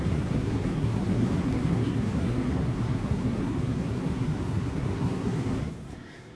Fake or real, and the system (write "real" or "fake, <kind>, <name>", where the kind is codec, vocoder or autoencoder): fake, codec, SNAC